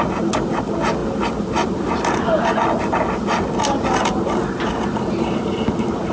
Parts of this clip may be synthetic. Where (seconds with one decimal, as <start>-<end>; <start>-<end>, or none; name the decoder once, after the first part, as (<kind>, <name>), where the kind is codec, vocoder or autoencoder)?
none